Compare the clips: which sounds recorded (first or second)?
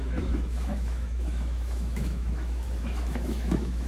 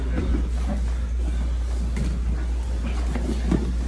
second